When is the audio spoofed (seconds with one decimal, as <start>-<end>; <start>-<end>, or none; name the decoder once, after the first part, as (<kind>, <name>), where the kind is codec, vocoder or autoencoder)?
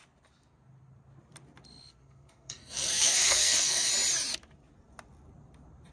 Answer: 2.0-3.9 (codec, SNAC)